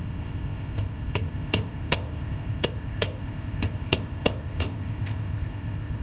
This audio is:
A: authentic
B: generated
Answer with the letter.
B